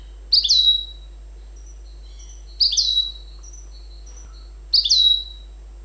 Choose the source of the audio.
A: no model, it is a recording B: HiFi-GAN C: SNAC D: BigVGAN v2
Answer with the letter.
A